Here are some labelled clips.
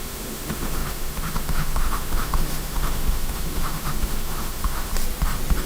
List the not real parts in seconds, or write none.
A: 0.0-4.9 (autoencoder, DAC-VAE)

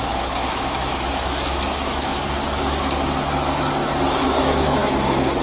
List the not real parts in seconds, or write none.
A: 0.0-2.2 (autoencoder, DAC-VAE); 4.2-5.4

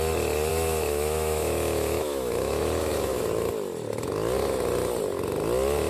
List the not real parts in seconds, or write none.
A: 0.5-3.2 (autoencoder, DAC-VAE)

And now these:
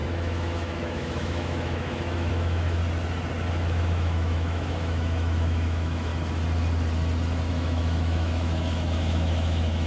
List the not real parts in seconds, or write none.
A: 0.0-2.8 (autoencoder, DAC-VAE); 3.5-6.1; 7.5-9.9

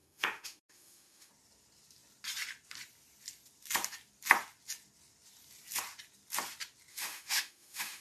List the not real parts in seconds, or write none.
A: 0.0-1.3 (autoencoder, DAC-VAE); 6.9-8.0